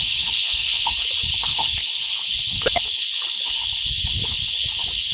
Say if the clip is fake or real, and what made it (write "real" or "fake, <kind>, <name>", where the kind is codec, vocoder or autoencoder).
fake, codec, HILCodec